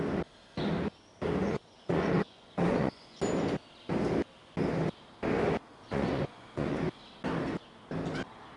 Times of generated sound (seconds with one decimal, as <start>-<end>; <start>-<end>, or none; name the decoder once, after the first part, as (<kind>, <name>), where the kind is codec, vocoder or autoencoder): 1.4-3.2 (vocoder, Vocos); 5.7-6.8